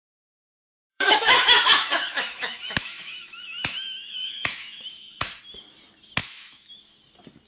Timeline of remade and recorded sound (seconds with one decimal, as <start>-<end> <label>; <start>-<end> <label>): 0.0-0.9 recorded; 0.9-5.4 remade; 5.4-6.2 recorded; 6.2-6.7 remade; 6.7-7.5 recorded